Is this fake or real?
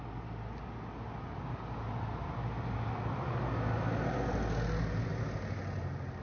real